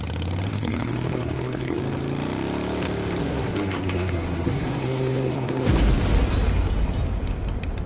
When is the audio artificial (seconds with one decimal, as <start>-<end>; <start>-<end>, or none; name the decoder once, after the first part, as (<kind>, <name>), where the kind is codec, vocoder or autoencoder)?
0.5-1.8 (codec, SNAC); 3.2-5.7